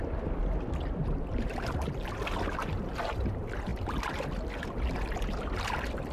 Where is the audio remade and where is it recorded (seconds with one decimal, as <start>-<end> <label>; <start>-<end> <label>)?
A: 0.0-6.1 recorded